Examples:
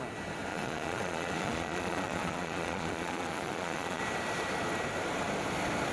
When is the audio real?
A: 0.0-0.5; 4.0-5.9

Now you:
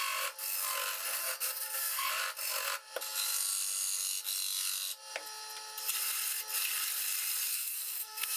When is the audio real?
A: 0.0-1.2; 2.1-7.5

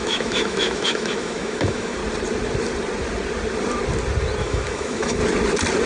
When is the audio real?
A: 2.0-4.4; 5.2-5.9